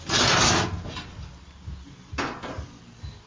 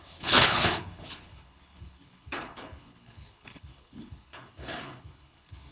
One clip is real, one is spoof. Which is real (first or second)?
first